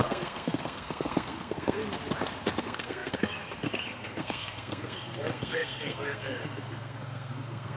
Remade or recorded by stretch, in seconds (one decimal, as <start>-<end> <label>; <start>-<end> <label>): 0.0-1.8 remade; 1.8-2.6 recorded; 2.6-7.8 remade